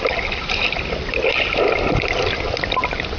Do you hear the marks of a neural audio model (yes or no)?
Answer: no